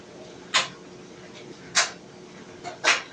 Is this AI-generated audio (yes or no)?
no